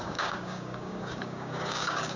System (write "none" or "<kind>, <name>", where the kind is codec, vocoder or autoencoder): codec, DAC